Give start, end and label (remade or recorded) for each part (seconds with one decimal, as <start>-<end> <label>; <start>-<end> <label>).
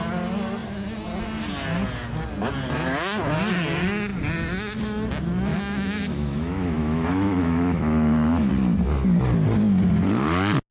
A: 0.0-5.5 recorded; 5.5-8.5 remade; 8.5-10.7 recorded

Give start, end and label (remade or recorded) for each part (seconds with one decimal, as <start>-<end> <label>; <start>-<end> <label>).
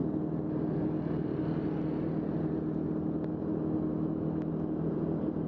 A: 0.0-3.9 recorded; 3.9-4.5 remade; 4.5-5.5 recorded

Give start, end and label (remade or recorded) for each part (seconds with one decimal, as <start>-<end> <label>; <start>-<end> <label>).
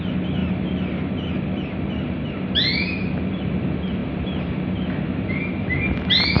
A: 0.0-6.4 recorded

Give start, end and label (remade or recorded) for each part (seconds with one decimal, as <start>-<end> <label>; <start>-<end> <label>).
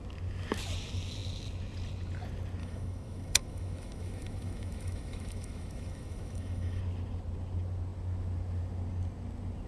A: 0.0-2.6 recorded; 2.6-6.8 remade; 6.8-9.7 recorded